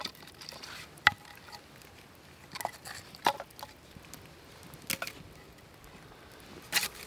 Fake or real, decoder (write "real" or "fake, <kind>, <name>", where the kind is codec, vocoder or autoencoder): real